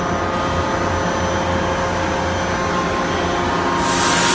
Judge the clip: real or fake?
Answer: real